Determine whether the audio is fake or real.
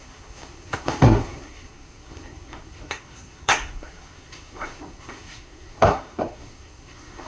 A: fake